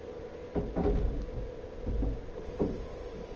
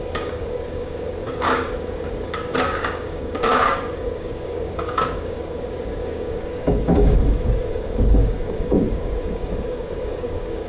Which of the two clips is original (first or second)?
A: first